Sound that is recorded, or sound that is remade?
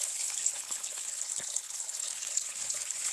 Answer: remade